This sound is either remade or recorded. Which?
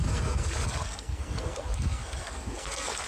remade